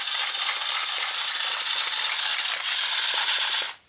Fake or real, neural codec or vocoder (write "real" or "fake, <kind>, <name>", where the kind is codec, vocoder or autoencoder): real